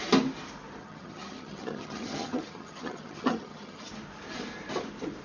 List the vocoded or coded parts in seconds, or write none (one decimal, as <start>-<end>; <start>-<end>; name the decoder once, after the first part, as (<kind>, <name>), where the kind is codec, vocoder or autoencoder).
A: 0.8-3.9 (vocoder, HiFi-GAN)